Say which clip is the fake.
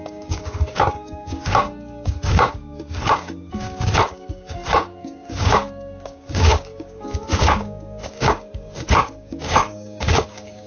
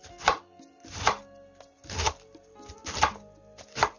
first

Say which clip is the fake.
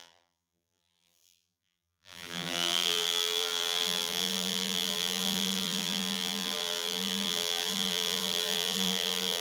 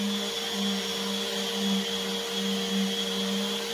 first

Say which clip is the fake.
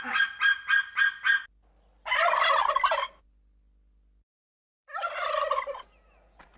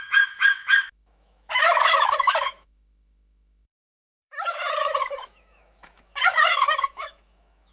second